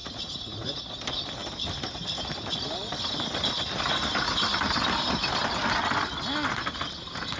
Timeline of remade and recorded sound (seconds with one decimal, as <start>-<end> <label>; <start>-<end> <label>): 0.0-0.8 remade; 0.8-7.4 recorded